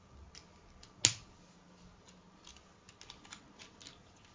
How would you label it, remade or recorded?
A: recorded